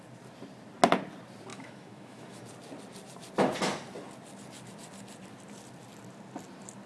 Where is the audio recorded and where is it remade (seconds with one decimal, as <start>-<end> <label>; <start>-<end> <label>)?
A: 0.0-1.5 recorded; 1.5-2.4 remade; 2.4-6.9 recorded